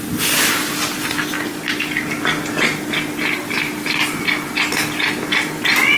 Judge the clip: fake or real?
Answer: real